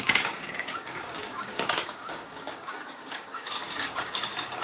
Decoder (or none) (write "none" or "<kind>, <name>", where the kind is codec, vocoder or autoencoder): codec, DAC